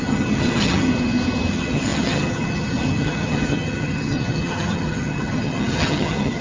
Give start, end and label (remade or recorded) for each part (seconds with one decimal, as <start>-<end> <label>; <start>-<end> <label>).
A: 0.0-0.9 remade; 0.9-1.5 recorded; 1.5-6.4 remade